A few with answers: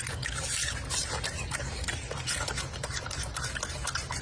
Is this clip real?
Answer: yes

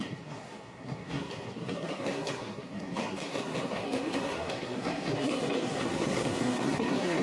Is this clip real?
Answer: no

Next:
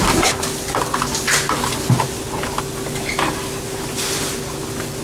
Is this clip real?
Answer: yes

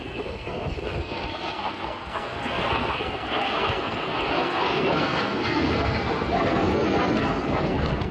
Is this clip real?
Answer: no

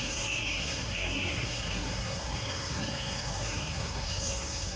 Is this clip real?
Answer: no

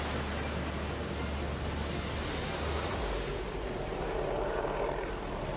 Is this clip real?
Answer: yes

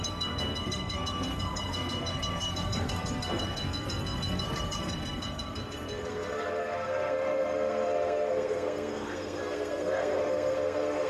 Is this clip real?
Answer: no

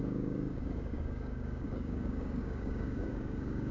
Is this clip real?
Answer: no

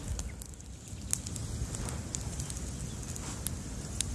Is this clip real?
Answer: yes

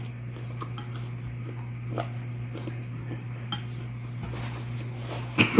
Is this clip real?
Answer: yes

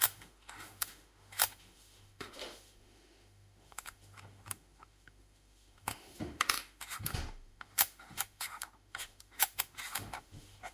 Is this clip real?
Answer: no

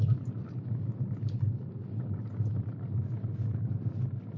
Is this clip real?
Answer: yes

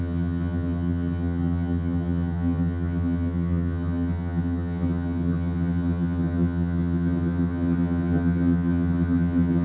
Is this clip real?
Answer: no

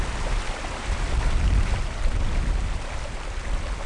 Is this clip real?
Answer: yes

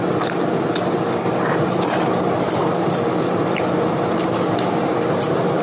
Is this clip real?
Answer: yes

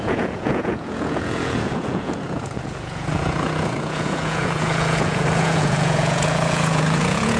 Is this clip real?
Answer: no